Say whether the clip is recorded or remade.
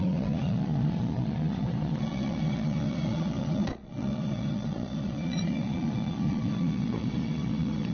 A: remade